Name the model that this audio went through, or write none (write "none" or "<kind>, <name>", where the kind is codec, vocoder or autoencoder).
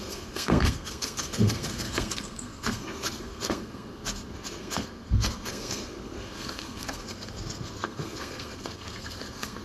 codec, SNAC